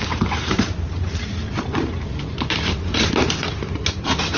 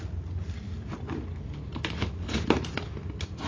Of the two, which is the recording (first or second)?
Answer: second